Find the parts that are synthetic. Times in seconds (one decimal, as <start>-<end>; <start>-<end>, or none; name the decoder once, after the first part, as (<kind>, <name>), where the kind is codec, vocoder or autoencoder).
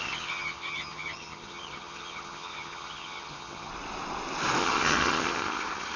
0.0-3.7 (vocoder, HiFi-GAN); 4.6-6.0